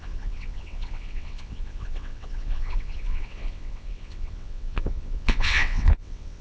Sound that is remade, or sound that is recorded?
remade